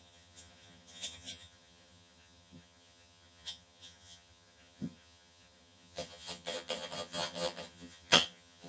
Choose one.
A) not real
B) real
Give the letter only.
A